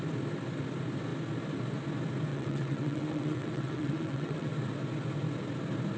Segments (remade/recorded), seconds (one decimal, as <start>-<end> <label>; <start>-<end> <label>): 0.0-2.3 recorded; 2.3-4.5 remade; 4.5-6.0 recorded